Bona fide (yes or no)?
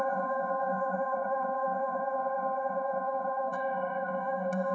no